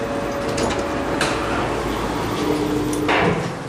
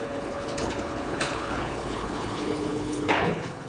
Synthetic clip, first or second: second